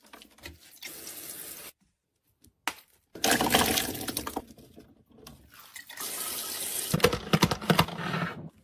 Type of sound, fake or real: real